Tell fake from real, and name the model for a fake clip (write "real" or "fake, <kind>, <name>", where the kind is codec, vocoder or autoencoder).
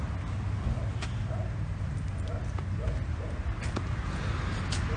real